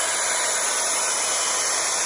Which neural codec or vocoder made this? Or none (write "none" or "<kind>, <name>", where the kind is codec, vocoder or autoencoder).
none